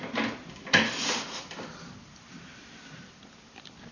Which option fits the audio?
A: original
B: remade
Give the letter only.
A